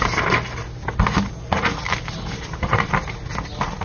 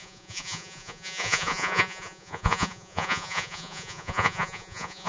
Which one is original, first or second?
first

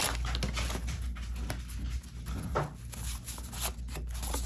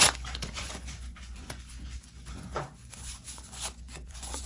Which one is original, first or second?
first